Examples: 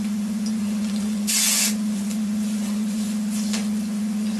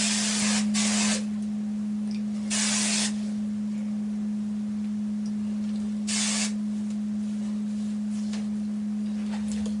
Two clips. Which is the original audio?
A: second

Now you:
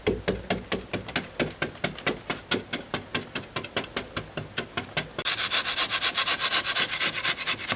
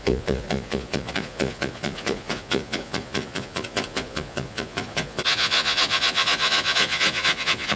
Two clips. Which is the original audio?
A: first